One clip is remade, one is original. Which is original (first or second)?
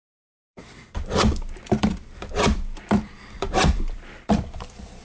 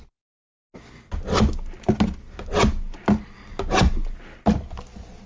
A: second